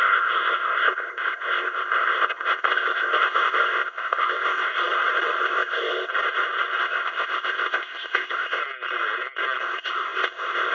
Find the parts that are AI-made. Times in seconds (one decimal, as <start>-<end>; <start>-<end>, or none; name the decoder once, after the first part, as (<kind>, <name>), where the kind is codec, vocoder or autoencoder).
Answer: 0.0-4.7 (codec, ZipCodec); 5.4-6.1; 6.8-8.6; 9.6-10.7